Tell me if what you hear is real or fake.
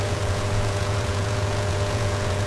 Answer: fake